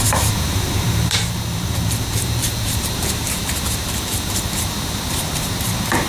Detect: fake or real fake